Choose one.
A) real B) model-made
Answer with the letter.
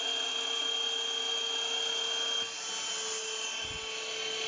A